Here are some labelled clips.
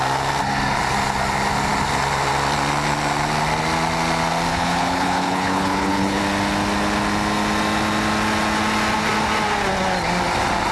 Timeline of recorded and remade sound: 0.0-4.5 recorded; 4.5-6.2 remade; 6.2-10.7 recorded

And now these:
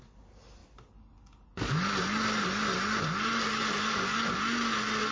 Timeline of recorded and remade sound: 0.0-5.1 recorded